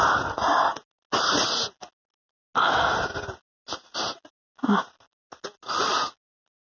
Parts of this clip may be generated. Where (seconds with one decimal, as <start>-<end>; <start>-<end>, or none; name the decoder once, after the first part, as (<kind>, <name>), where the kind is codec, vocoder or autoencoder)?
none